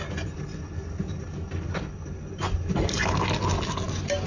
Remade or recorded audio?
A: recorded